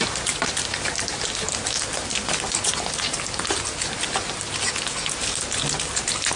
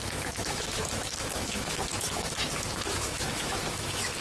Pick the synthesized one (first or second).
second